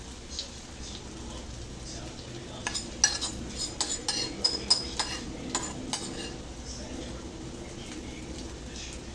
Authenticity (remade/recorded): recorded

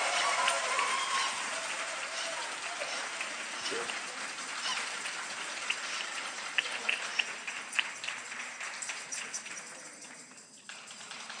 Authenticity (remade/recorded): remade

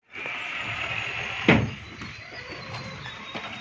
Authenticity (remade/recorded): recorded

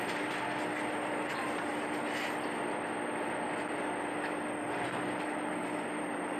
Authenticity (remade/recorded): recorded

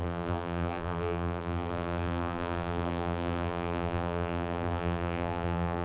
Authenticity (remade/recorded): remade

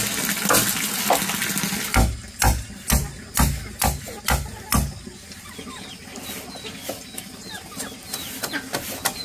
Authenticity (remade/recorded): recorded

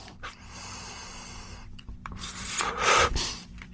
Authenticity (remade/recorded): remade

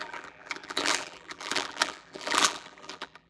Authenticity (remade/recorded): remade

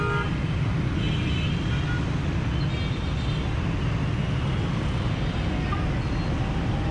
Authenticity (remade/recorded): recorded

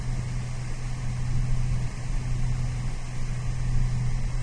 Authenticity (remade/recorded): recorded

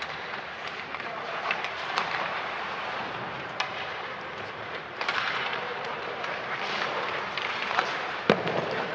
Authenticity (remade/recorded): remade